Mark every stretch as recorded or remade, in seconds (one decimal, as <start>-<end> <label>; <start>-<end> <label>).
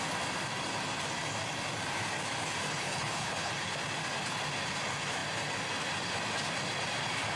0.0-2.7 recorded; 2.7-3.5 remade; 3.5-7.4 recorded